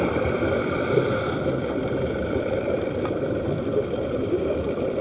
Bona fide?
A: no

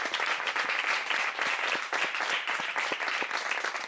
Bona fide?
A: yes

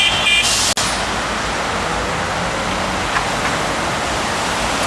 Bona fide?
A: yes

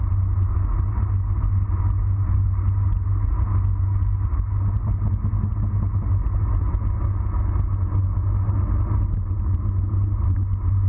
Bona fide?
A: yes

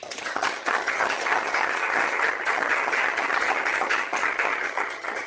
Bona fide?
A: no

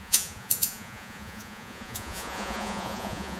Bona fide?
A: no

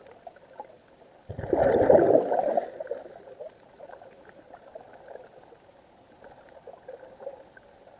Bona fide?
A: yes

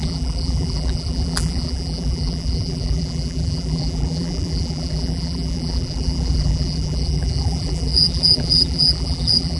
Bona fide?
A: no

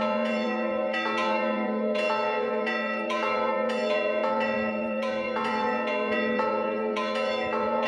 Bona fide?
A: no